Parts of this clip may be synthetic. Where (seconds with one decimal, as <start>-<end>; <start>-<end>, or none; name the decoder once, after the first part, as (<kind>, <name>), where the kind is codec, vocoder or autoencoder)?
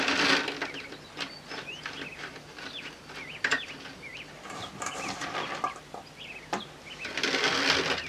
none